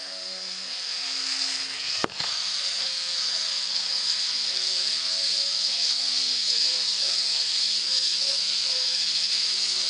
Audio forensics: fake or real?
fake